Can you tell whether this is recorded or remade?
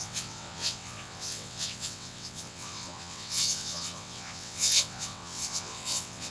remade